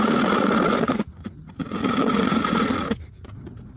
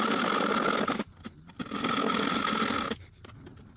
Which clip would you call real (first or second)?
second